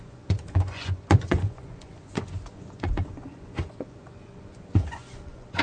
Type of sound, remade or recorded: remade